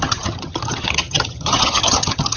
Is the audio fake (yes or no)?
yes